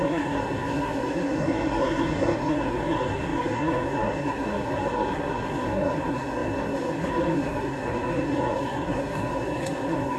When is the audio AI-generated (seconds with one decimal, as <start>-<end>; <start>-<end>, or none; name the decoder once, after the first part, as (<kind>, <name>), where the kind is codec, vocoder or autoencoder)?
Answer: 0.0-10.2 (codec, SNAC)